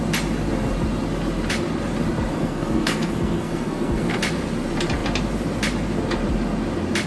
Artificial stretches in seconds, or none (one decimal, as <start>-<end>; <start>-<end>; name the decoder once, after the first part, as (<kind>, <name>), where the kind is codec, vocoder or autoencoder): 2.3-4.2 (codec, SNAC)